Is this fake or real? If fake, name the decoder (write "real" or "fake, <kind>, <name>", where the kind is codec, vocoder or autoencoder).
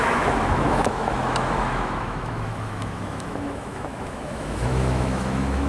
fake, autoencoder, DAC-VAE